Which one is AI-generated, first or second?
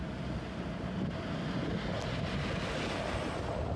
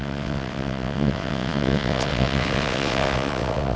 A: second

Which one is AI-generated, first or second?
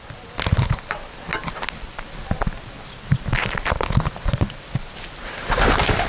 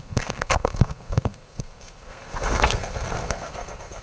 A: second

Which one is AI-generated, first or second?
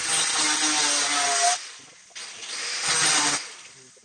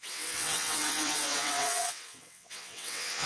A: second